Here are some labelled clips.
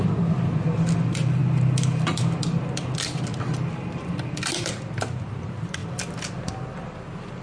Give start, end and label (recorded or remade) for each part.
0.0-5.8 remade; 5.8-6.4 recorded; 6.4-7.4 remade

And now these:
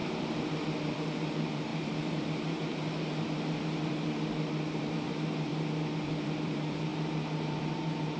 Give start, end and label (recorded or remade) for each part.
0.0-5.5 remade; 5.5-6.0 recorded; 6.0-8.2 remade

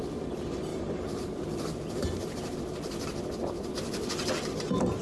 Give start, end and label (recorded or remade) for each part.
0.0-0.7 recorded; 0.7-3.7 remade; 3.7-5.0 recorded

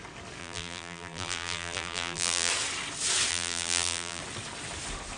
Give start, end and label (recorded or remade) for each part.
0.0-0.4 recorded; 0.4-2.5 remade; 2.5-3.3 recorded; 3.3-4.2 remade; 4.2-5.2 recorded

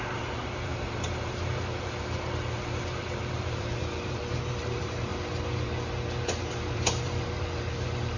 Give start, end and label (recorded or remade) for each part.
0.0-5.1 remade; 5.1-6.4 recorded; 6.4-8.2 remade

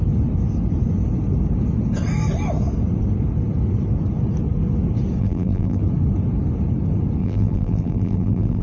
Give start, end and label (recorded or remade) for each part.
0.0-5.2 recorded; 5.2-5.8 remade; 5.8-7.2 recorded; 7.2-8.6 remade

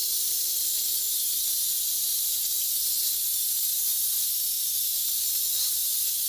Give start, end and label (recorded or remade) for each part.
0.0-6.3 recorded